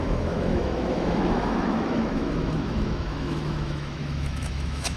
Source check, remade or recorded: remade